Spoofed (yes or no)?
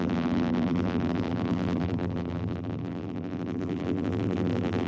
yes